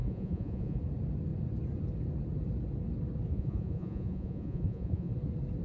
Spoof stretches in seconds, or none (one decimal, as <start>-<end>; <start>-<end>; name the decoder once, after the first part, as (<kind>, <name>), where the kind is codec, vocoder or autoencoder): 0.0-0.8 (vocoder, Vocos); 3.3-5.1